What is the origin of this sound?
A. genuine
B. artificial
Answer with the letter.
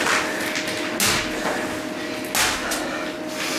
A